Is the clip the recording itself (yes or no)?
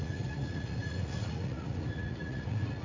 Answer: no